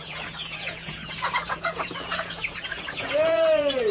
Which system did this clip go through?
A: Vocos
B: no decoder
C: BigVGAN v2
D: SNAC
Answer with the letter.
A